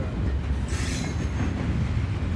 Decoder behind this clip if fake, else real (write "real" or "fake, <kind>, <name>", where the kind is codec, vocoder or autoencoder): real